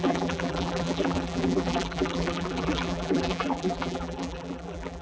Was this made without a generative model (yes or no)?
no